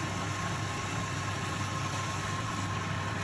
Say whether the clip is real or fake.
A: real